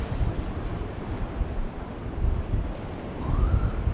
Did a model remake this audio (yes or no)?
no